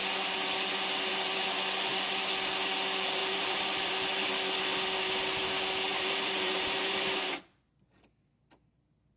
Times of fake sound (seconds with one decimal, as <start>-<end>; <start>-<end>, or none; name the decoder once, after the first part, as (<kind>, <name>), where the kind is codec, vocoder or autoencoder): 3.2-3.9 (vocoder, BigVGAN v2); 5.9-7.4